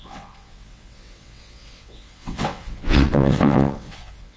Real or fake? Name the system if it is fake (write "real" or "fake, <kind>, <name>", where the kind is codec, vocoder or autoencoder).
fake, vocoder, WaveNeXt